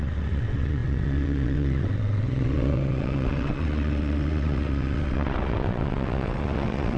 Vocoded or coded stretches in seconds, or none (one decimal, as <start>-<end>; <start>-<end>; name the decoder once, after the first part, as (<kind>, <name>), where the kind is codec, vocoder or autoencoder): 0.0-7.0 (vocoder, WaveNeXt)